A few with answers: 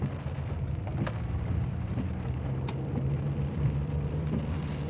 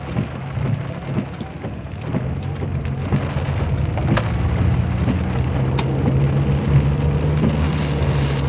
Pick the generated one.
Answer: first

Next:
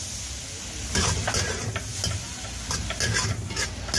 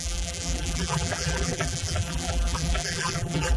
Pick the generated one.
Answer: second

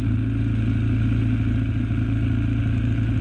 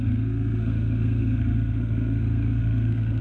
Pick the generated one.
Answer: second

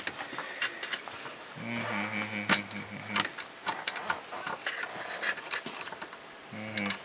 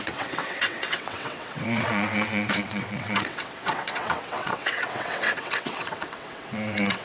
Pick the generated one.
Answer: second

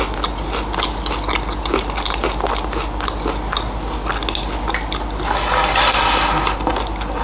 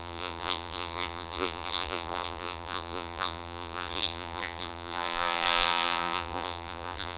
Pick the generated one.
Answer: second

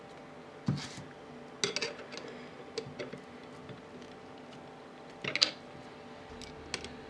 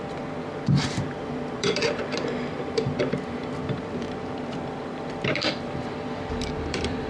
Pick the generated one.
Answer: second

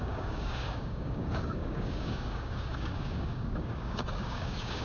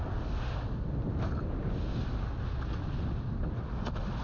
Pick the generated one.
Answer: first